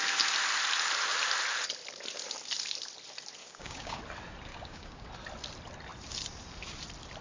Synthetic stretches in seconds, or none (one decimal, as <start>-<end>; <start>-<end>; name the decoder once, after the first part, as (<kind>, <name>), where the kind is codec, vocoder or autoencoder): 3.4-4.0 (codec, DAC); 4.5-5.1